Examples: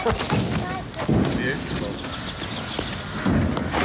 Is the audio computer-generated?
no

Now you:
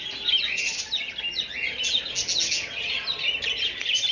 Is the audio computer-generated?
no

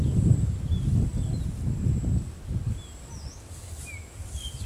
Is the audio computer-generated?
no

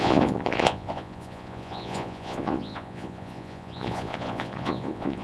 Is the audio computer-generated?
yes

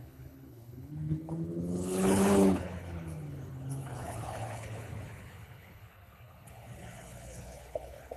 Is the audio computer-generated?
yes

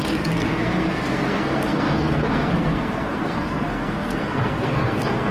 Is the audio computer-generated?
yes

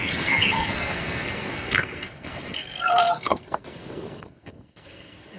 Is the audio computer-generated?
yes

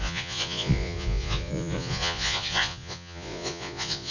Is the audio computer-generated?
yes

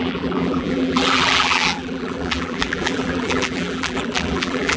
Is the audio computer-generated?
yes